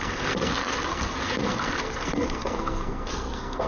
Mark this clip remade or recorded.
remade